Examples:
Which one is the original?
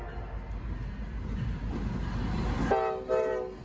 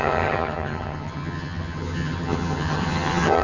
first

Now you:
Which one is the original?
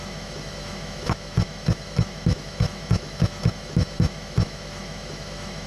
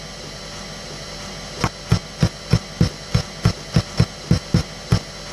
second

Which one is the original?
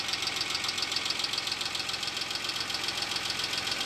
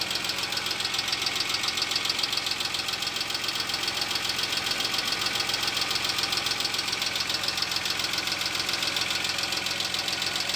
second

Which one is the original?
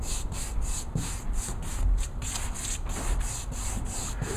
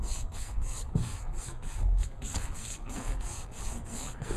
first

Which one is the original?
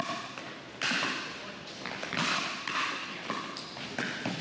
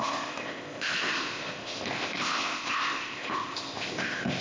first